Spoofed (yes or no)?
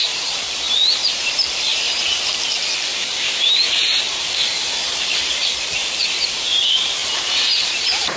yes